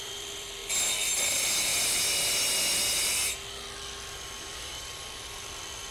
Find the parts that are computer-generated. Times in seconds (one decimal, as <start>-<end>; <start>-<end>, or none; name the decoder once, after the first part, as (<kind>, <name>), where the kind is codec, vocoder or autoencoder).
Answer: 0.0-0.6 (vocoder, BigVGAN v2); 1.2-1.7; 4.3-5.9

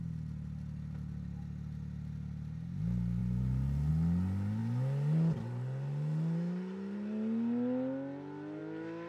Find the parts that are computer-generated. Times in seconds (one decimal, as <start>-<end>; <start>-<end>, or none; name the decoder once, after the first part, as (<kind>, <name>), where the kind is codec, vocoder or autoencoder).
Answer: 3.2-3.9 (vocoder, BigVGAN v2)